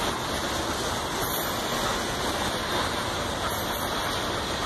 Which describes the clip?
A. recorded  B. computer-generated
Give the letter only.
A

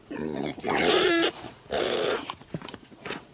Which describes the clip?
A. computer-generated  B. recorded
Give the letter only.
A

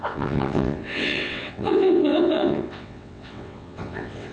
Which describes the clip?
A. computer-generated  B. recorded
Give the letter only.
A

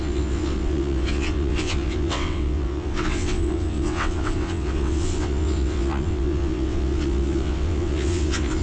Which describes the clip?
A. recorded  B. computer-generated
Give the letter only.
B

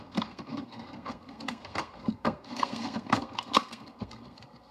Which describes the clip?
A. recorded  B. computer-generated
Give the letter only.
B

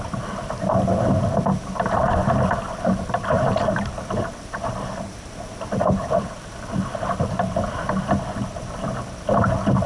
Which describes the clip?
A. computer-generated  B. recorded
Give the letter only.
B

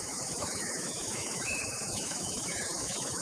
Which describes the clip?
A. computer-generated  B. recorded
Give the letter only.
A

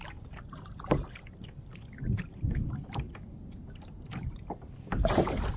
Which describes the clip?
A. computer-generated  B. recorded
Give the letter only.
B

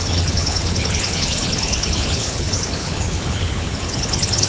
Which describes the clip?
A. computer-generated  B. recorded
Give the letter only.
A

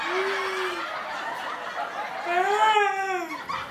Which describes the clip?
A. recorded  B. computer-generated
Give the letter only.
A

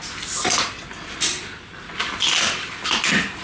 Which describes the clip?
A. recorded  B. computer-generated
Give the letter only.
A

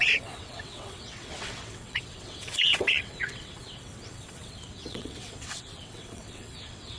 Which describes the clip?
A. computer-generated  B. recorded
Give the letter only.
A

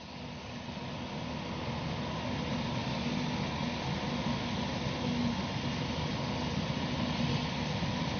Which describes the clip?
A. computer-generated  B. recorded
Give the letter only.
B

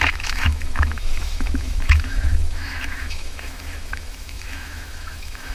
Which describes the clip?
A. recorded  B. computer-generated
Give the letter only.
B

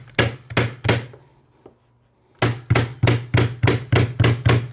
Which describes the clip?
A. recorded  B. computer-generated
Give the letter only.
A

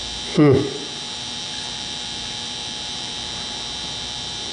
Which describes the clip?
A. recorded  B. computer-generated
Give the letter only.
B